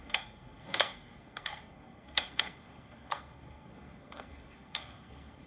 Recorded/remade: remade